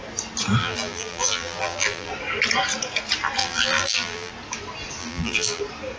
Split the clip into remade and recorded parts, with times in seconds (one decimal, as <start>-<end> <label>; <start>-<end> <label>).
0.0-0.6 recorded; 0.6-2.1 remade; 2.1-3.4 recorded; 3.4-4.3 remade; 4.3-5.0 recorded; 5.0-5.6 remade; 5.6-6.0 recorded